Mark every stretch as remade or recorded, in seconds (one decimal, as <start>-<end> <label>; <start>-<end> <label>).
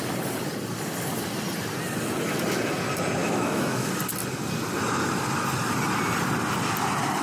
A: 0.0-3.2 recorded; 3.2-3.9 remade; 3.9-7.2 recorded